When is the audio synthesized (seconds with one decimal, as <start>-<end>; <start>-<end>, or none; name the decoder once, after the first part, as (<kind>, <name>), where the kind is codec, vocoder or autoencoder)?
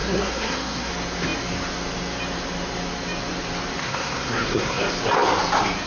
0.0-0.9 (codec, SNAC); 3.8-4.8